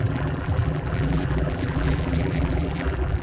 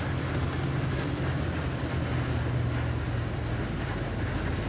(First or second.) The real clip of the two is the second